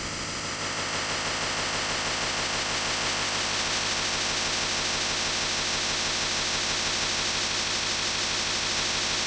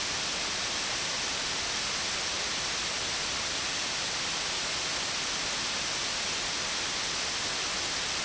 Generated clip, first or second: first